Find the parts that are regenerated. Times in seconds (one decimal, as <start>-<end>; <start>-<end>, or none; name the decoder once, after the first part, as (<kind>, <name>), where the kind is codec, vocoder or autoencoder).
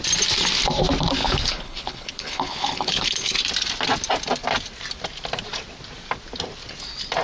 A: 1.2-3.4 (codec, HILCodec)